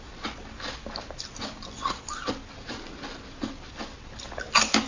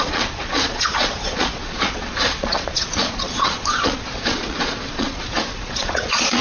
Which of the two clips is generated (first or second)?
second